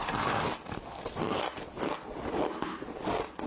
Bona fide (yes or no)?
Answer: yes